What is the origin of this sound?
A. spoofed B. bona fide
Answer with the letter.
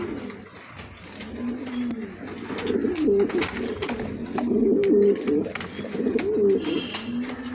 B